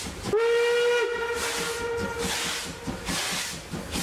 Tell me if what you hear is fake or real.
real